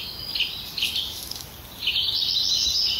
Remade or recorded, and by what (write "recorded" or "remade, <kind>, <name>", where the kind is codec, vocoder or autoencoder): recorded